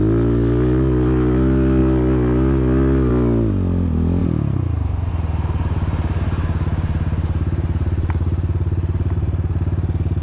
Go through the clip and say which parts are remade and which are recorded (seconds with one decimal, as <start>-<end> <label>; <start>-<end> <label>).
0.0-10.2 recorded